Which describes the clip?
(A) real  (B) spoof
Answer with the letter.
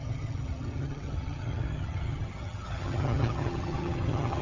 B